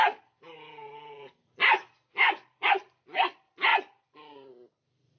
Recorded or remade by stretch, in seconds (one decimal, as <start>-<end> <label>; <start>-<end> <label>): 0.0-5.2 remade